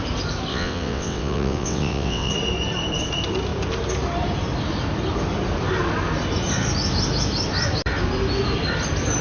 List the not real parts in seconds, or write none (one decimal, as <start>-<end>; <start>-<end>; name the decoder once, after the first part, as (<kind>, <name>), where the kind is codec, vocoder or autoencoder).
0.5-2.3 (vocoder, WaveNeXt)